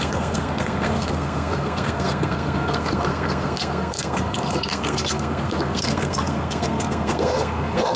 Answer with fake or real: fake